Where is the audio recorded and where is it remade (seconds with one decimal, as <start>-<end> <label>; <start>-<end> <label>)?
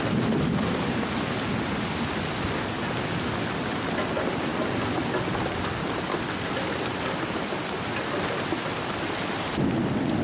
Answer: 0.0-10.2 recorded